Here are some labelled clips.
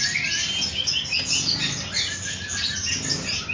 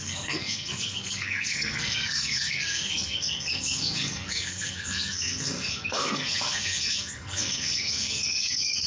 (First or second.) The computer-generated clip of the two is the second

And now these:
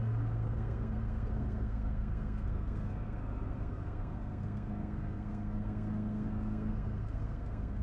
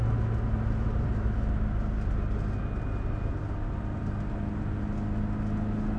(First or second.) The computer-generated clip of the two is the first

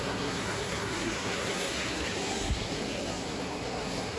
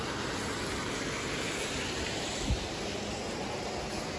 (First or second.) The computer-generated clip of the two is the first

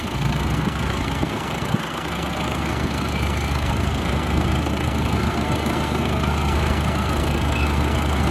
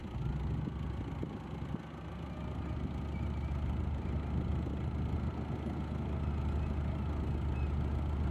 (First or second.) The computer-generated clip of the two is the first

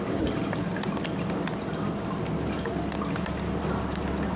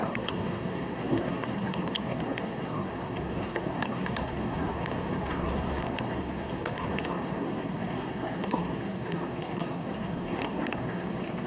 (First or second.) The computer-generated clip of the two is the second